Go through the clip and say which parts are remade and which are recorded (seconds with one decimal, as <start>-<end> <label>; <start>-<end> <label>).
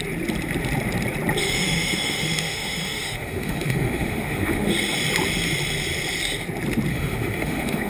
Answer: 0.0-1.4 recorded; 1.4-4.7 remade; 4.7-6.9 recorded; 6.9-7.9 remade